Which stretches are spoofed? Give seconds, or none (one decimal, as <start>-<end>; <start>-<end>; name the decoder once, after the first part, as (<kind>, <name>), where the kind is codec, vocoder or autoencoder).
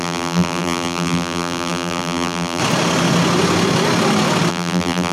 0.0-2.6 (vocoder, BigVGAN v2); 4.5-5.1